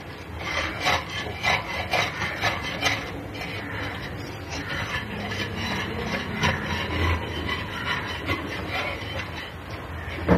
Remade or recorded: recorded